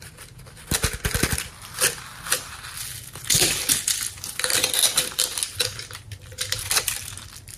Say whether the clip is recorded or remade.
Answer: recorded